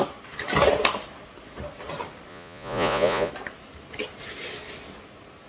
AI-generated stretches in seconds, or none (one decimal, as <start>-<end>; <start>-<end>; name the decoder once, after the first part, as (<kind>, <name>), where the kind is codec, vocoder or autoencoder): 2.3-3.3 (vocoder, Vocos)